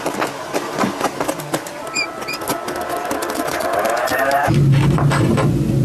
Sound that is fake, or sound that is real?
real